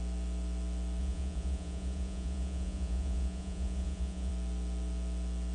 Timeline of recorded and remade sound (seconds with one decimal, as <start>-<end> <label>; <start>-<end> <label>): 0.0-1.0 recorded; 1.0-4.3 remade; 4.3-5.5 recorded